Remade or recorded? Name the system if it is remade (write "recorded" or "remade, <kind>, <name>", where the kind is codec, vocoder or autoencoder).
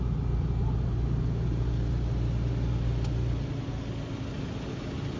recorded